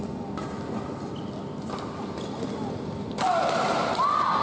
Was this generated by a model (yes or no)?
no